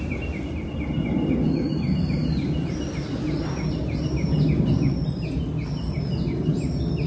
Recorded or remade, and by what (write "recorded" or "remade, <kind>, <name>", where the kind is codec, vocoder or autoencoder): recorded